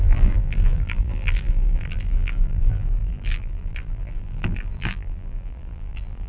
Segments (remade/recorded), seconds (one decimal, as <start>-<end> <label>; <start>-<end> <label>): 0.0-6.3 remade